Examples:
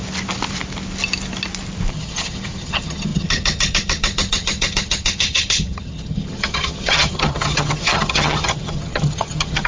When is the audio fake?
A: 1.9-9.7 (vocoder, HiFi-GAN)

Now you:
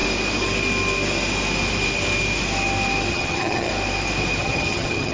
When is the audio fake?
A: 3.1-3.7 (vocoder, HiFi-GAN); 4.4-5.1